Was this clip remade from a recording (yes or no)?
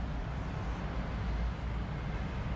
no